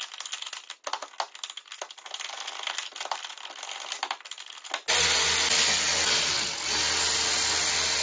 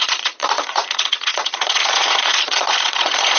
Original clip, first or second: first